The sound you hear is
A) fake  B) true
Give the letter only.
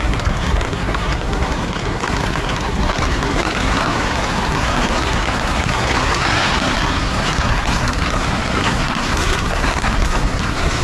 A